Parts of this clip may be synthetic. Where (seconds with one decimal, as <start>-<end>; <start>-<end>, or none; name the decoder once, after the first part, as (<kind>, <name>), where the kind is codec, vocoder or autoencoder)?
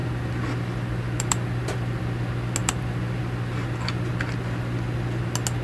0.0-2.0 (vocoder, BigVGAN v2); 2.6-4.1